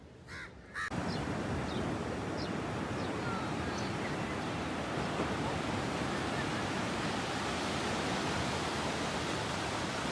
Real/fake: real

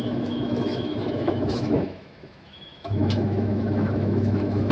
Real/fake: fake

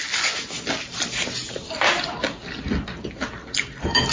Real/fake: real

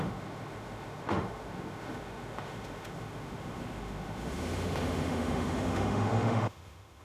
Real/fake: fake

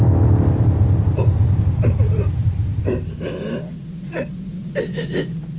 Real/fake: real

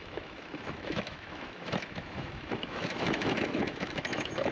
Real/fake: fake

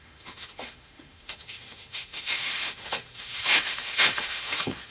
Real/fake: fake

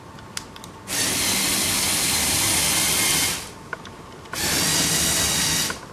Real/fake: real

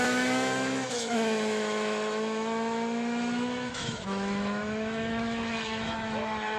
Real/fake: fake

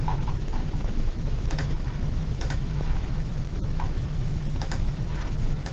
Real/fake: fake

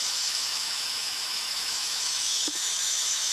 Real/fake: fake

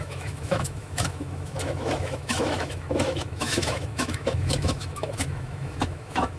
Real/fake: fake